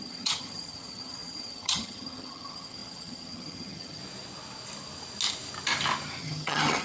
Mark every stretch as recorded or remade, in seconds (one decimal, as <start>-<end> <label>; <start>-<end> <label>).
0.0-4.0 remade; 4.0-6.2 recorded; 6.2-6.8 remade